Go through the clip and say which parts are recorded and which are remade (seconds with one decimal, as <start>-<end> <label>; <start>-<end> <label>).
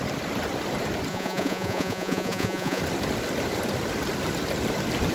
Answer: 0.0-1.1 recorded; 1.1-2.8 remade; 2.8-5.1 recorded